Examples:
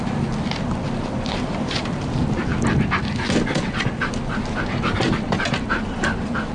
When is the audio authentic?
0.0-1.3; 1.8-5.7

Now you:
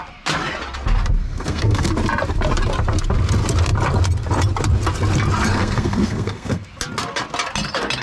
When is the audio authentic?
0.0-1.2; 1.9-5.5; 6.7-8.0

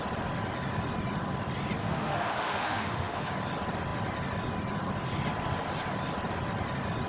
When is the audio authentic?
0.0-1.8; 3.3-7.1

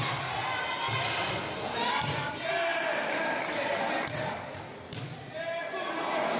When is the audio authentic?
0.0-6.4